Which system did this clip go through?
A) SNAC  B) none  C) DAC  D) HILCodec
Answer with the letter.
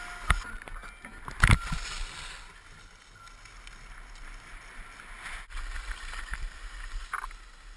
B